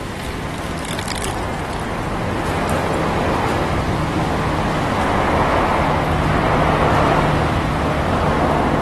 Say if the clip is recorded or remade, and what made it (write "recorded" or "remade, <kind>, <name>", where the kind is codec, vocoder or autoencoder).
recorded